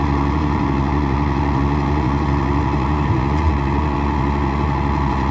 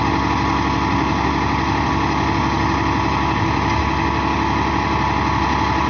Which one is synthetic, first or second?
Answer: first